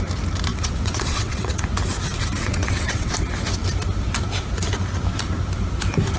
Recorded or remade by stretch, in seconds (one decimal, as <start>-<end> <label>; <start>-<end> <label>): 0.0-0.5 recorded; 0.5-1.6 remade; 1.6-2.4 recorded; 2.4-3.1 remade; 3.1-6.2 recorded